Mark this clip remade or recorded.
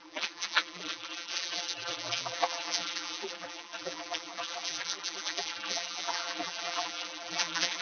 remade